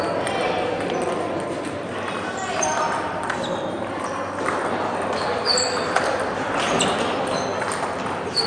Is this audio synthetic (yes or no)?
no